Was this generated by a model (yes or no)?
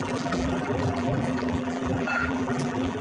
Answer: yes